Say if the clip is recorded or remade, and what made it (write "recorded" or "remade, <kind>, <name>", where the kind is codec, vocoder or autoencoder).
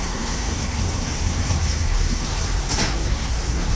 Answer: remade, codec, SNAC